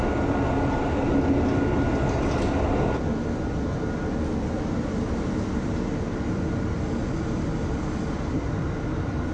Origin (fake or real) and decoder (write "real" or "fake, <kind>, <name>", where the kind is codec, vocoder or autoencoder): real